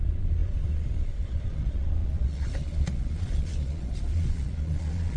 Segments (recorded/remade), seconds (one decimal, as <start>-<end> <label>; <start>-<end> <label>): 0.0-5.2 remade